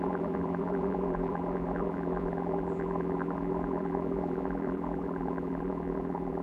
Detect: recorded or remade remade